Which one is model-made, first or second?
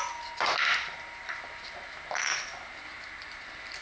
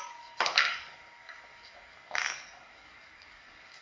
second